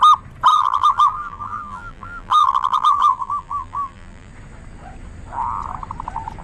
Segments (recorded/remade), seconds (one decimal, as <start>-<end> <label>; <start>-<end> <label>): 0.0-0.5 recorded; 0.5-4.3 remade; 4.3-6.4 recorded